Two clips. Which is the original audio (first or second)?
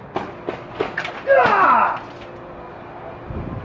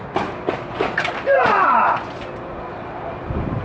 first